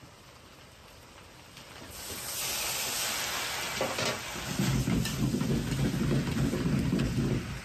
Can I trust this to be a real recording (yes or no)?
yes